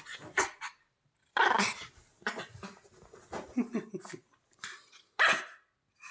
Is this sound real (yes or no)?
yes